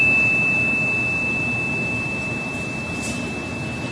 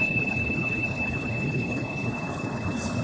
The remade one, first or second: second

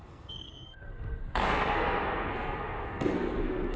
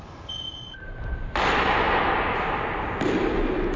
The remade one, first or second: first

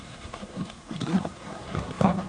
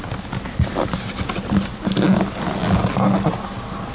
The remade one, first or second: first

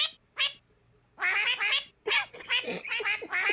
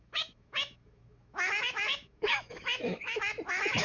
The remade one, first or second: second